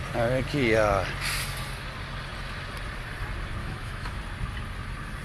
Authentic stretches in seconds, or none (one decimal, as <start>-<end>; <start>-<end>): 0.0-3.6; 4.2-5.2